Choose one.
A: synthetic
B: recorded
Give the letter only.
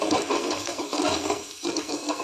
A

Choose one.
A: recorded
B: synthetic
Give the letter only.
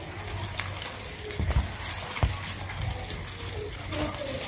A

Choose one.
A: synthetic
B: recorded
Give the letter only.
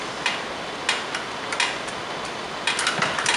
B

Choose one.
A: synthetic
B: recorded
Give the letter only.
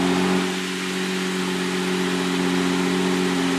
B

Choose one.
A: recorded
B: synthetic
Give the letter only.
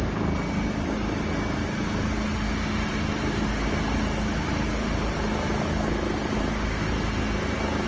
A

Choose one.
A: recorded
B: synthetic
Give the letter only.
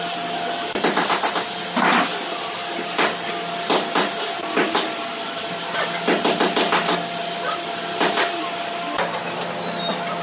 A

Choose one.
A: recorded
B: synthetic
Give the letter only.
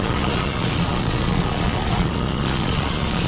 B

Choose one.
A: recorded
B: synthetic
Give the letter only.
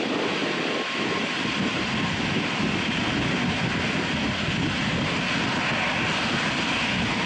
A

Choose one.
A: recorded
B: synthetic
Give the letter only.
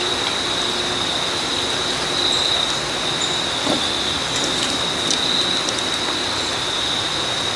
A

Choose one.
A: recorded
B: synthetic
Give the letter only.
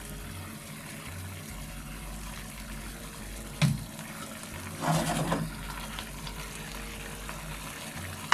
A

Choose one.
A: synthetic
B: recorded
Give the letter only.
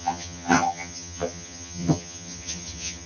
A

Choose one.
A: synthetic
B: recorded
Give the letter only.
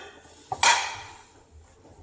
B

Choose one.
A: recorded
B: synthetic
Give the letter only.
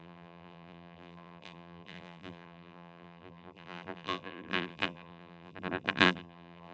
B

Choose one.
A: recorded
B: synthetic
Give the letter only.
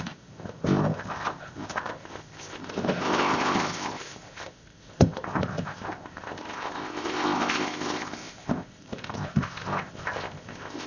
B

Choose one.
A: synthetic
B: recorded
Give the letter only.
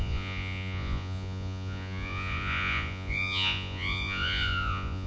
A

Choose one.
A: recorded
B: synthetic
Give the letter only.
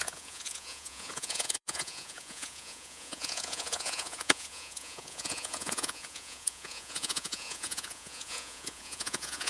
B